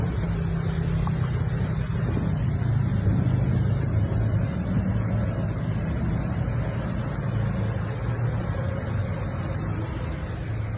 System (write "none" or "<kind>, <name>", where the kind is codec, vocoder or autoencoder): none